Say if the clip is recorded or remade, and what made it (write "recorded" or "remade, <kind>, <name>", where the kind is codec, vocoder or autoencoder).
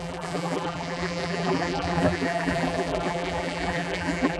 remade, vocoder, BigVGAN v2